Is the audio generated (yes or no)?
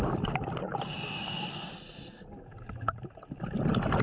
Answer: no